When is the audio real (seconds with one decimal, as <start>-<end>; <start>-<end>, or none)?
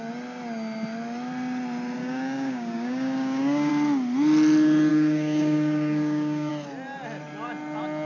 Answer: 0.0-2.0; 3.7-4.9; 6.5-8.0